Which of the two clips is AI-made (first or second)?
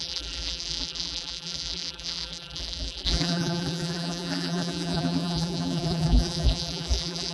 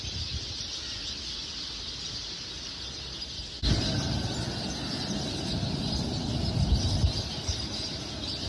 first